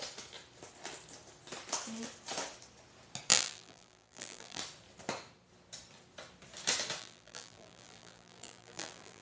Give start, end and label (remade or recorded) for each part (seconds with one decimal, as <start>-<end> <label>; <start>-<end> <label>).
0.0-3.3 recorded; 3.3-4.6 remade; 4.6-7.0 recorded; 7.0-9.2 remade